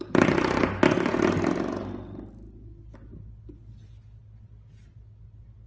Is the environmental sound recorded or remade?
recorded